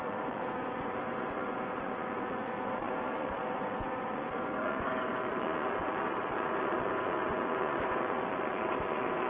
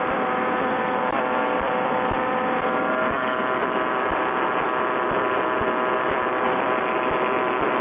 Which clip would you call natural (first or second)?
second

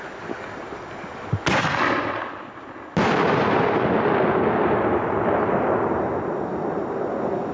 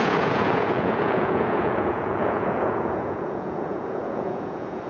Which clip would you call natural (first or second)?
first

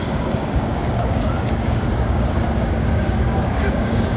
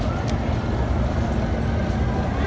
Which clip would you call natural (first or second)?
second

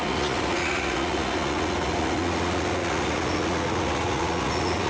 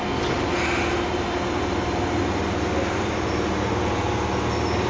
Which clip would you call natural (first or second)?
second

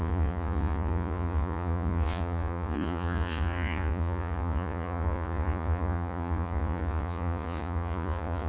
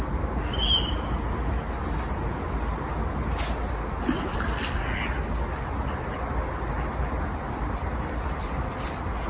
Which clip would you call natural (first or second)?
second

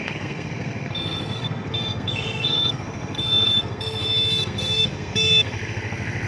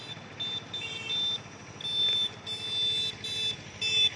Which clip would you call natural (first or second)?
second